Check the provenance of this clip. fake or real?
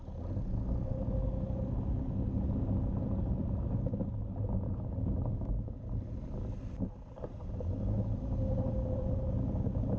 real